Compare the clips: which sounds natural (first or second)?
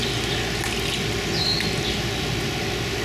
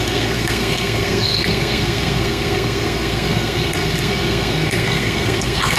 first